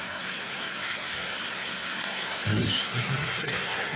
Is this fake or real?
fake